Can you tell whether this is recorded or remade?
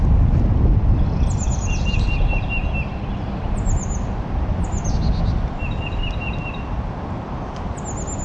recorded